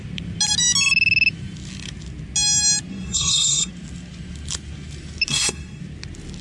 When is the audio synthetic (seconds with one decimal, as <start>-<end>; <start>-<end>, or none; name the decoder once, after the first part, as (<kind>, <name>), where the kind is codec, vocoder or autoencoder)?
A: 2.9-3.7 (codec, SNAC); 5.3-5.8